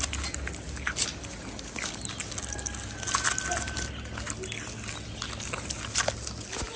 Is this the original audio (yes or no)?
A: yes